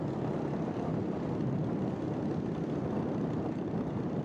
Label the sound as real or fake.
real